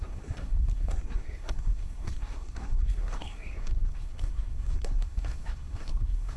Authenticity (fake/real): fake